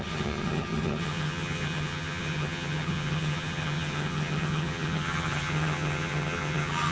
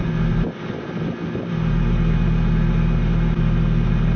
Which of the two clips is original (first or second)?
second